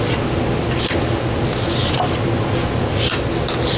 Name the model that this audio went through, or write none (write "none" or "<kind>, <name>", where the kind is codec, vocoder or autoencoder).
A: none